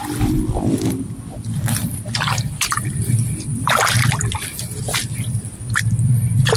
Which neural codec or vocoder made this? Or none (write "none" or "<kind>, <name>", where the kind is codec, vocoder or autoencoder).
vocoder, BigVGAN v2